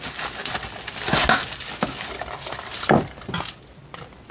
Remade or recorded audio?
recorded